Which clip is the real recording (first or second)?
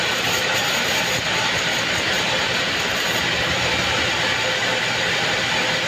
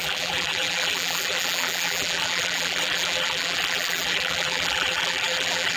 first